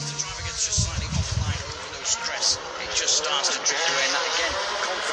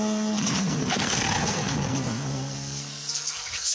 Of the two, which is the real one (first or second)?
first